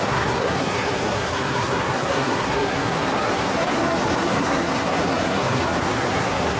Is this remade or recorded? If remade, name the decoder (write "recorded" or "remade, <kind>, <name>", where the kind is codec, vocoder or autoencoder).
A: remade, codec, SNAC